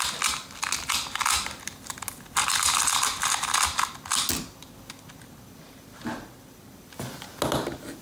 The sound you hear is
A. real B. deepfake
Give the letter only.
A